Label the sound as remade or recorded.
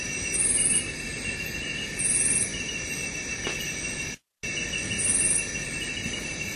recorded